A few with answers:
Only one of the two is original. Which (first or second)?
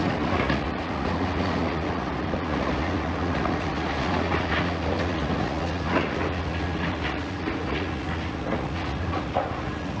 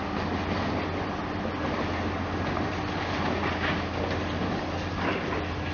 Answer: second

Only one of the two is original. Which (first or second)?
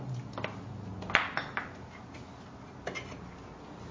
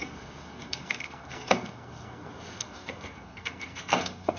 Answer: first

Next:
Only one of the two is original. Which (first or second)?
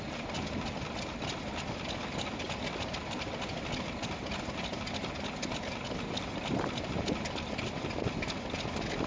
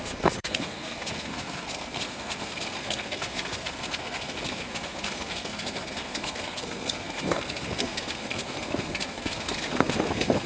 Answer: first